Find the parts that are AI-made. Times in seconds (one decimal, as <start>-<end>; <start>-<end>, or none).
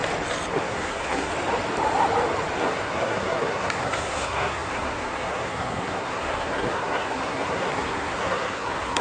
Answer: 0.5-1.3; 2.6-9.0